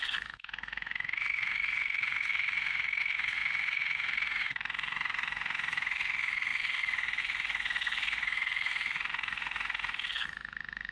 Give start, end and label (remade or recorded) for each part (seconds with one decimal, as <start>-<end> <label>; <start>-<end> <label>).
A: 0.0-10.9 remade